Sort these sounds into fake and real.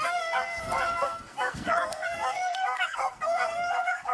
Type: fake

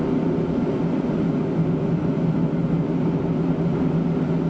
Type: real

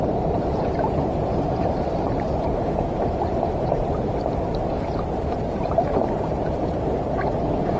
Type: fake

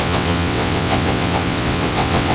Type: fake